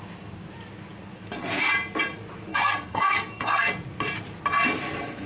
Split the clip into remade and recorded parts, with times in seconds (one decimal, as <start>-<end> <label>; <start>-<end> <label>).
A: 0.0-2.5 recorded; 2.5-3.7 remade; 3.7-5.3 recorded